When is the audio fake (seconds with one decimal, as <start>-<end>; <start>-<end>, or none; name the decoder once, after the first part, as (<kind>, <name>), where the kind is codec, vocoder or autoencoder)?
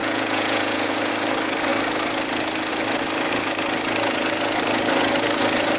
0.0-1.1 (vocoder, Vocos)